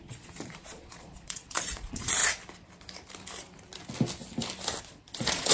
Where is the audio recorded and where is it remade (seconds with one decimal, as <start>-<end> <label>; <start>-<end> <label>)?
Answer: 0.0-2.2 remade; 2.2-4.8 recorded; 4.8-5.5 remade